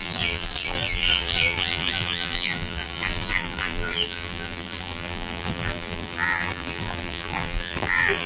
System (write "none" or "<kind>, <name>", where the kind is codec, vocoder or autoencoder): vocoder, BigVGAN v2